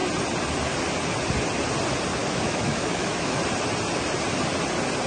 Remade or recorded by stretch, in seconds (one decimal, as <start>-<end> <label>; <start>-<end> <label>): 0.0-2.2 recorded; 2.2-3.4 remade; 3.4-5.1 recorded